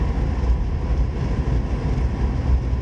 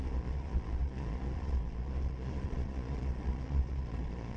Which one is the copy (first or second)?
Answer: second